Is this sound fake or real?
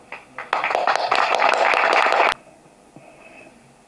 real